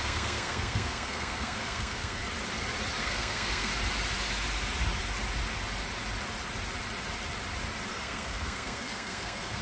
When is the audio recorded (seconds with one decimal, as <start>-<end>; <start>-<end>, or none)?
2.2-3.0; 3.7-7.9